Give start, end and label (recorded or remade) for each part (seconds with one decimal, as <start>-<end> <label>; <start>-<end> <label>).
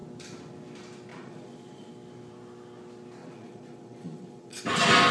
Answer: 0.0-1.1 recorded; 1.1-1.9 remade; 1.9-3.2 recorded; 3.2-4.6 remade; 4.6-5.1 recorded